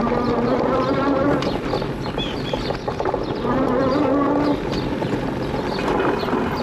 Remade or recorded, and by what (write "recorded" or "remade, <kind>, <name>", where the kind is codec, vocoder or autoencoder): recorded